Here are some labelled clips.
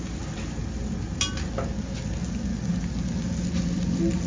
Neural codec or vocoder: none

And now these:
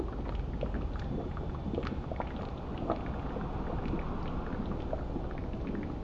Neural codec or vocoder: none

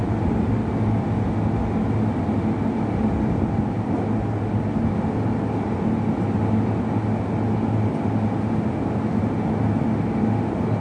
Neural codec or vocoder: none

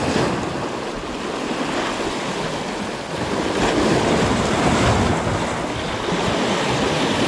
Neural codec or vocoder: none